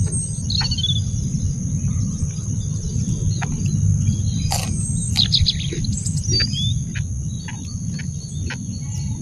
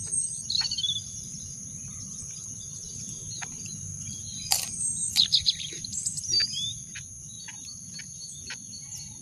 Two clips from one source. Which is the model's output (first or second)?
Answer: second